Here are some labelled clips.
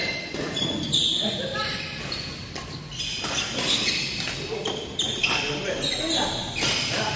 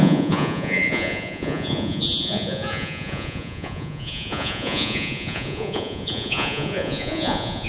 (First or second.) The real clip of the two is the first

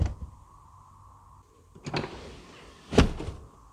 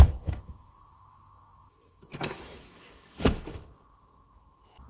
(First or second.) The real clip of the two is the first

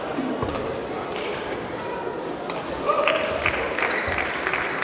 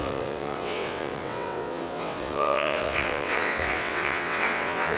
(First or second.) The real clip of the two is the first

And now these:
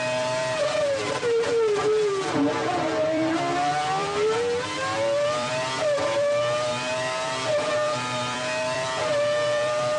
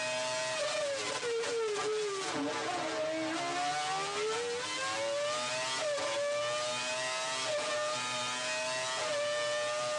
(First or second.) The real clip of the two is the second